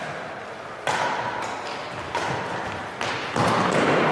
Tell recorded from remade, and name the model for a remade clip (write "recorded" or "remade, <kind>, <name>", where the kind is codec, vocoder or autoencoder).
recorded